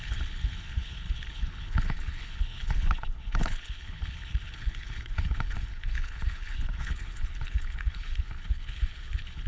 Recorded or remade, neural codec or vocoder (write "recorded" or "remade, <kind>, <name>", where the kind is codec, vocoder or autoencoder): remade, codec, HILCodec